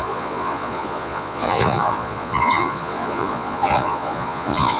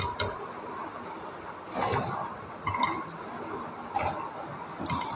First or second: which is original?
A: second